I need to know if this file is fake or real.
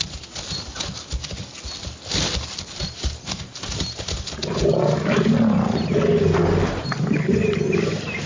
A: real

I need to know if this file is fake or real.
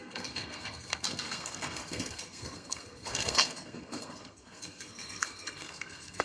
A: fake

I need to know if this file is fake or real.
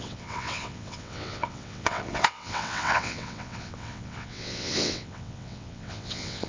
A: fake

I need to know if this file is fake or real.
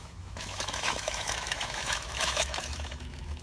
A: fake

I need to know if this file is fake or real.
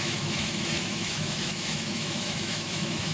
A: fake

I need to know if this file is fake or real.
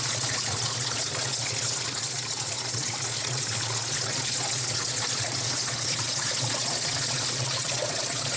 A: fake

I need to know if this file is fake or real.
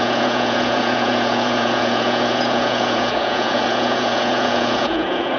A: fake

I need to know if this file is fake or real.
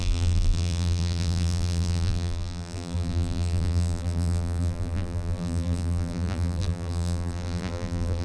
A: fake